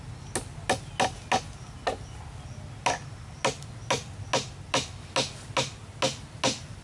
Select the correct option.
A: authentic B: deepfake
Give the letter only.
A